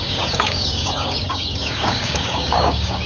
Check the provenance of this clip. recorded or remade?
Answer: remade